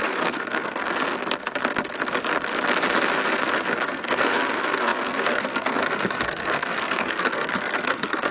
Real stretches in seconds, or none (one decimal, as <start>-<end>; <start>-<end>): 0.8-3.9